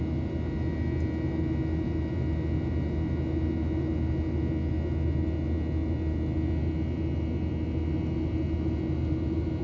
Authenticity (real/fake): real